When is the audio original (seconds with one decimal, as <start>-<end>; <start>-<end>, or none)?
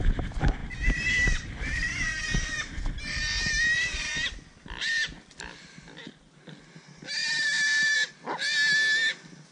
0.0-0.6; 5.4-7.2; 8.1-9.5